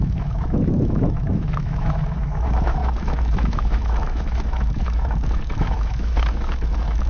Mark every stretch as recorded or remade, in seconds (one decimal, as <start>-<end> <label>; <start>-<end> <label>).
0.0-7.1 remade